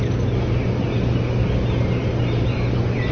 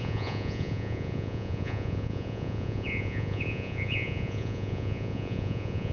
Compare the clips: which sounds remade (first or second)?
second